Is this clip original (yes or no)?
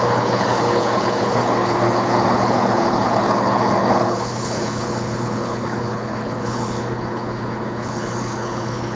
no